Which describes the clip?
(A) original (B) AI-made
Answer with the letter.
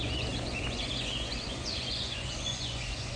B